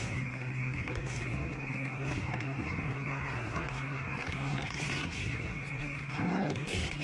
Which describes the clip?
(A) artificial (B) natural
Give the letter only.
A